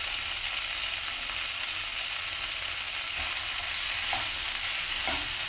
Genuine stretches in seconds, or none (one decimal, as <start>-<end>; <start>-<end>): 0.0-5.5